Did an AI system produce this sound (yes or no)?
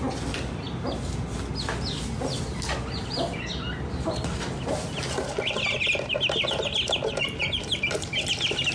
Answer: no